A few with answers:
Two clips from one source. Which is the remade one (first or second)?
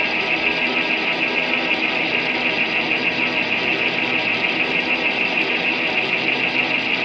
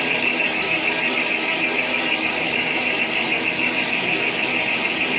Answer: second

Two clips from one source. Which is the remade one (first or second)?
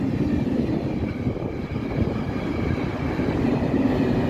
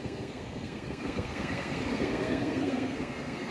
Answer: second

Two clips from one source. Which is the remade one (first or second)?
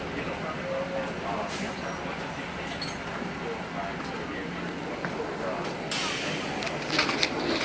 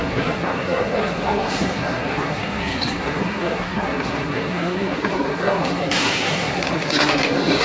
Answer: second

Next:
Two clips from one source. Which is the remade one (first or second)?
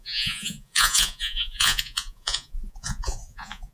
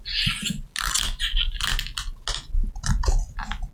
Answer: first